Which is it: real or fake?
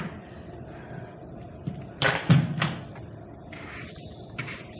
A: real